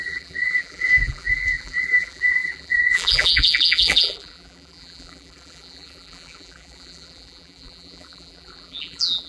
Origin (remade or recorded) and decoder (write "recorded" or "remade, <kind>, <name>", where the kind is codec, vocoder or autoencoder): remade, vocoder, BigVGAN v2